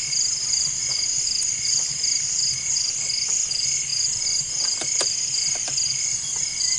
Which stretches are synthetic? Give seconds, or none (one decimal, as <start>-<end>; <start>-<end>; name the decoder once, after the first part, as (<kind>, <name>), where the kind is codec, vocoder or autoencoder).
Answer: none

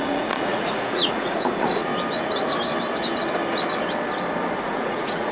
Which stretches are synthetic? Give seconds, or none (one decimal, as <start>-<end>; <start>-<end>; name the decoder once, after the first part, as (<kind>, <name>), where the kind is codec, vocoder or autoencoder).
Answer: 0.0-1.9 (vocoder, Vocos); 4.6-5.3